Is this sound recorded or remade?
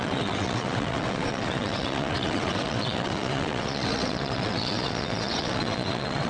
remade